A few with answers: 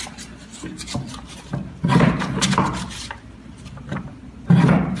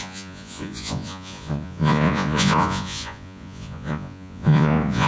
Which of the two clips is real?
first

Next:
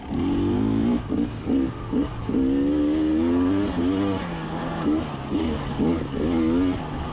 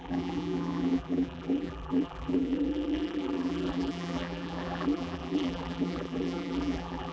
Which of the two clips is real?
first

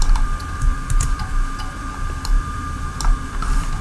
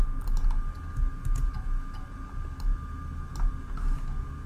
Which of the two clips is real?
second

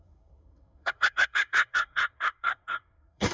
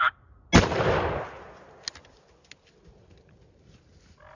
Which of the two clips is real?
second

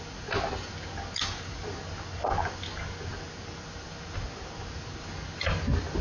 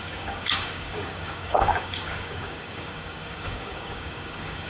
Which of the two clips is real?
first